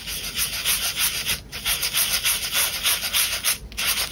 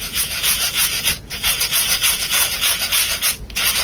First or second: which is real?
first